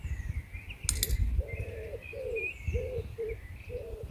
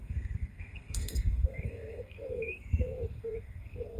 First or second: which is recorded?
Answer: first